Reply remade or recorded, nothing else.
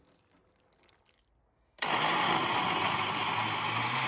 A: recorded